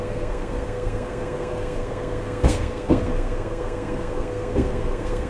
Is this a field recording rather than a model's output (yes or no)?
no